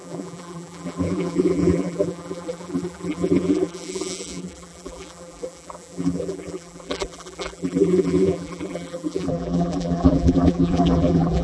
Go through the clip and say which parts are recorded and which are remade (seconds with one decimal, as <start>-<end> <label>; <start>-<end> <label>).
0.0-11.4 remade